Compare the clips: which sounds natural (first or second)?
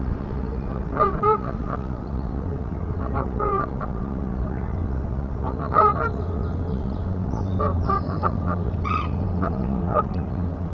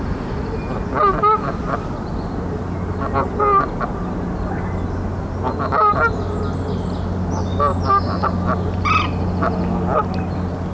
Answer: second